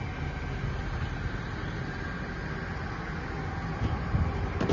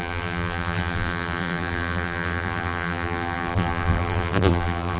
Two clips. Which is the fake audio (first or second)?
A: second